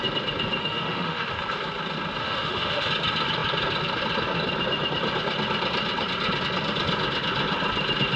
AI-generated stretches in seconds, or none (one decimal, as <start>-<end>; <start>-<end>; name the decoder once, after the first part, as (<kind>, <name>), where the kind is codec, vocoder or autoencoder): 0.6-1.3 (autoencoder, DAC-VAE); 2.2-2.9